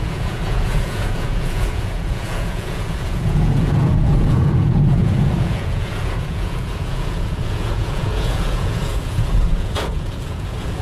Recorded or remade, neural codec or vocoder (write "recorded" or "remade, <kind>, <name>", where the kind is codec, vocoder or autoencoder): remade, vocoder, Vocos